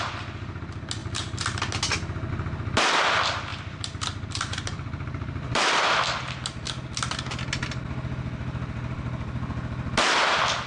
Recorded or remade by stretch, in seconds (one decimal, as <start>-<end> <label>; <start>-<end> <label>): 0.0-3.5 recorded; 3.5-6.4 remade; 6.4-10.7 recorded